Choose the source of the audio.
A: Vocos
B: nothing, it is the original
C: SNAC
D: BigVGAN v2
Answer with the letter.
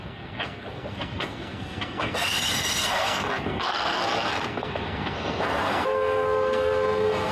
C